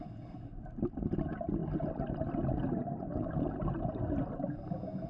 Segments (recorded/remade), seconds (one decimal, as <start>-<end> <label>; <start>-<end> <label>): 0.0-5.1 recorded